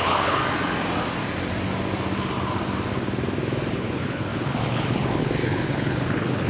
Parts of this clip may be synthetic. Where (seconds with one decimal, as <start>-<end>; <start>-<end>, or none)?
0.0-0.4; 3.7-6.5